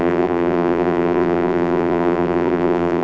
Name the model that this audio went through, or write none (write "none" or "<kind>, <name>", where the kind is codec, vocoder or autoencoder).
vocoder, BigVGAN v2